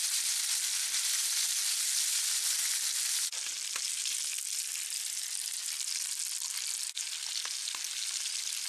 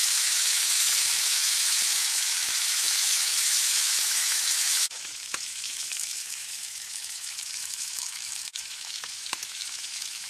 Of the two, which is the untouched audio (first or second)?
first